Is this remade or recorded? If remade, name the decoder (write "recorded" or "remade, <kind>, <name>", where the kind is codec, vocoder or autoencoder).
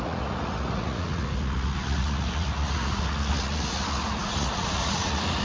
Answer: remade, vocoder, Vocos